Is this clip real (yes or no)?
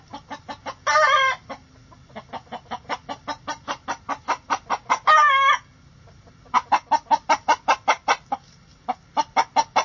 yes